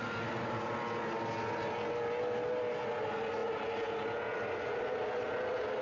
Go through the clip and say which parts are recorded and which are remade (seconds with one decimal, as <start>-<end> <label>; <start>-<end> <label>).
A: 0.0-5.8 recorded